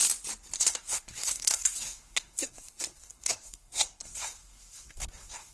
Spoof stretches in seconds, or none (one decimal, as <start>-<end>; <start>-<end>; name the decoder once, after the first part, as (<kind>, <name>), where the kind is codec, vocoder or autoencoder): 0.6-5.5 (codec, SNAC)